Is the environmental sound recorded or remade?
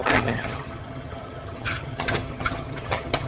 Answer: remade